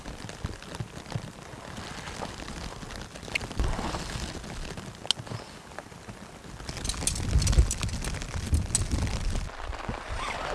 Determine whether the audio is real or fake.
real